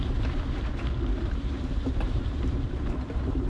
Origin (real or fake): fake